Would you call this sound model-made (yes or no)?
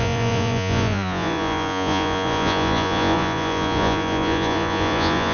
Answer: yes